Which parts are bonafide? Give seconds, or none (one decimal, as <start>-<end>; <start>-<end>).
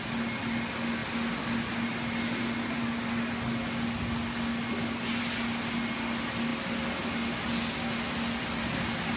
0.0-9.2